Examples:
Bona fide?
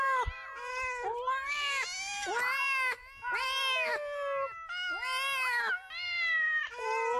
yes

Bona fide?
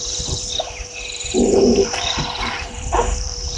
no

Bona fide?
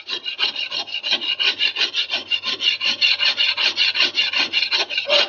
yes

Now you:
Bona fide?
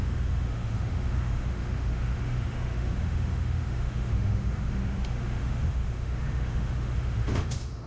no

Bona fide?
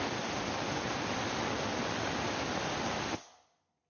yes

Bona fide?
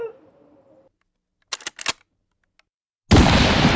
yes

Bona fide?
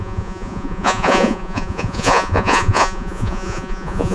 no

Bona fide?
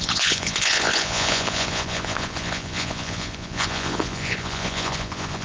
no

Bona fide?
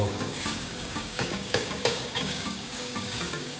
no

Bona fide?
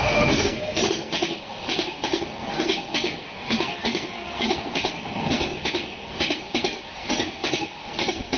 no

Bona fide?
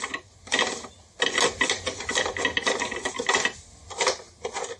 yes